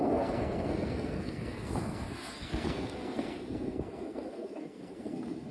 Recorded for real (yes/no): no